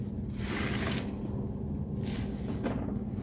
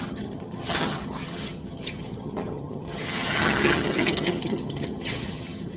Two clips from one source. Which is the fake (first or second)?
second